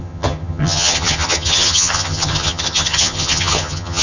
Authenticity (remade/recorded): remade